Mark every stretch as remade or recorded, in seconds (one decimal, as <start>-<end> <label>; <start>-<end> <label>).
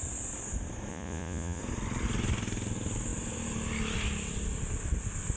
0.0-0.9 recorded; 0.9-1.6 remade; 1.6-5.4 recorded